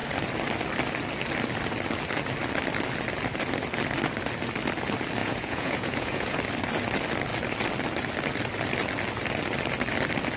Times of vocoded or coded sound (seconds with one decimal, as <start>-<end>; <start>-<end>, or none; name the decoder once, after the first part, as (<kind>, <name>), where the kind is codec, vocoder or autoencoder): 5.2-6.4 (vocoder, Vocos)